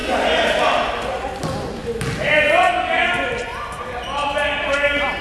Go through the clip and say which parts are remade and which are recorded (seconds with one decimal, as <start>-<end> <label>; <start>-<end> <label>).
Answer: 0.0-5.2 recorded